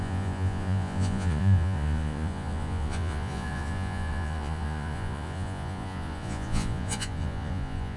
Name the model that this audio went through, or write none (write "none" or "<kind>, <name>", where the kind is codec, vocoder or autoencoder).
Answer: vocoder, Vocos